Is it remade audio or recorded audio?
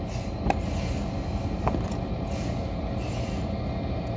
recorded